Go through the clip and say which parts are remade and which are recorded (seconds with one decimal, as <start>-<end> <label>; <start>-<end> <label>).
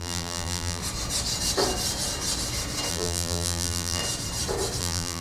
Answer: 0.0-0.8 remade; 0.8-2.9 recorded; 2.9-4.0 remade; 4.0-4.8 recorded; 4.8-5.2 remade